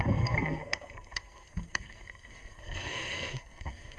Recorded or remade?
remade